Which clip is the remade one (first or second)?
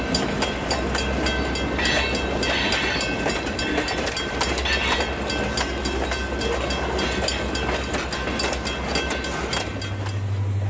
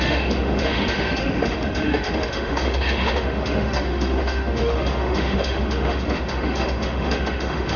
second